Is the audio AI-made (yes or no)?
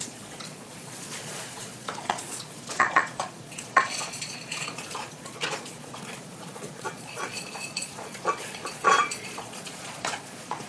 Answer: yes